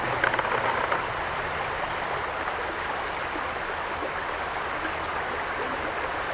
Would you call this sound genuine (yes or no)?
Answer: yes